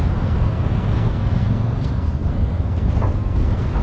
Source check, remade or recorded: remade